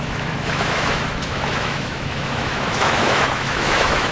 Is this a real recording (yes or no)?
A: no